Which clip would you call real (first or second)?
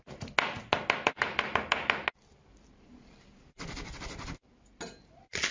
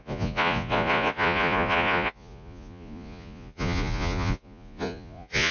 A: first